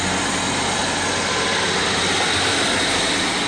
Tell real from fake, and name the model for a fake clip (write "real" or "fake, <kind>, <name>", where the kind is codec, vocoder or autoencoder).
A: real